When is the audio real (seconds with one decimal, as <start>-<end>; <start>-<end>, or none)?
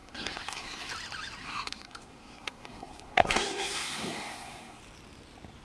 0.9-1.4; 4.8-5.6